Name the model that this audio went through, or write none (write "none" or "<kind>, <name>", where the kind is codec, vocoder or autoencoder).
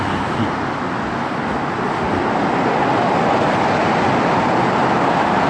none